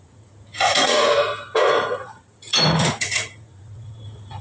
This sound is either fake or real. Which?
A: fake